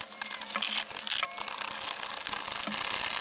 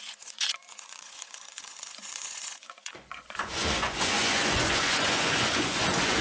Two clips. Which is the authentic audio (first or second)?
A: first